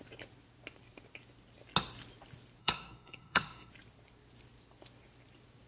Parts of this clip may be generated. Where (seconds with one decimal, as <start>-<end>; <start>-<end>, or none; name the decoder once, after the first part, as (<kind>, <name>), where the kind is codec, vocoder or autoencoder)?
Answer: 2.6-3.7 (codec, SNAC)